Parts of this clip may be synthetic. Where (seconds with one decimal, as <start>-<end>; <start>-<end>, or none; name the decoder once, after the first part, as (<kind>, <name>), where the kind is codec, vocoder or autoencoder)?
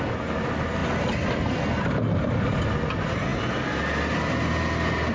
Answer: none